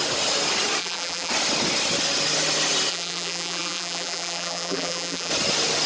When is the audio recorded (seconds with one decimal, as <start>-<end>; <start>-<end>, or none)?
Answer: 0.0-0.8; 1.3-2.9; 5.3-5.9